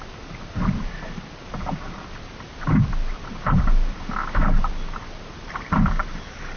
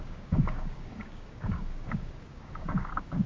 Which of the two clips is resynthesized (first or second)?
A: second